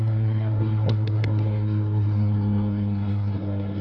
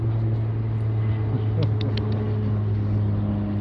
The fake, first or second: first